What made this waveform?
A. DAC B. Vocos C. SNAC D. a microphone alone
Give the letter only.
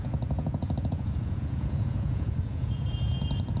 B